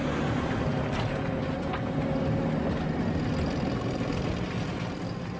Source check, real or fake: real